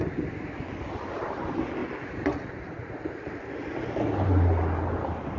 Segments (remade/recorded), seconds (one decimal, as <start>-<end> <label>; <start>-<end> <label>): 0.0-5.4 recorded